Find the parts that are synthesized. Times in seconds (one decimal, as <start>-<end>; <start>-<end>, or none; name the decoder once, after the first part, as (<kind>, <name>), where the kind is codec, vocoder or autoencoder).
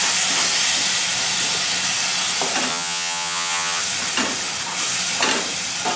2.7-3.8 (vocoder, HiFi-GAN)